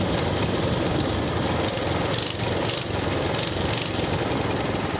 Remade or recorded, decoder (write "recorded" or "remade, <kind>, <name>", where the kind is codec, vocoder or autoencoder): recorded